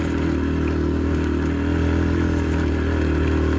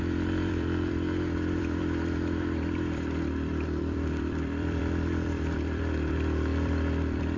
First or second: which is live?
first